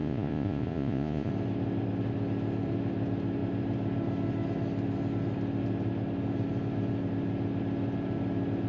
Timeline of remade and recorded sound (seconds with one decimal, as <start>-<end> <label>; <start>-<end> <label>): 0.0-1.3 remade; 1.3-8.7 recorded